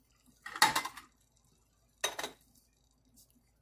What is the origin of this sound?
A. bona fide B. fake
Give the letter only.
A